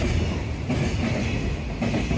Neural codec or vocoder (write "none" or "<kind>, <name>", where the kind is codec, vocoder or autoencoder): none